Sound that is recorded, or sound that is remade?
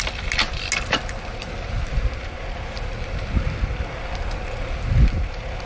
recorded